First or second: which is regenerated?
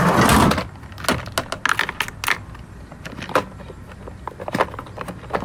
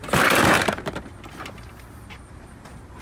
second